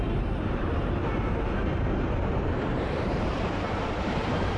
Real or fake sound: fake